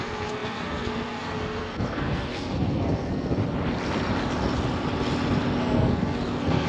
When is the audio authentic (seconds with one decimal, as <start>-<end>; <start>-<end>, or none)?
3.4-5.6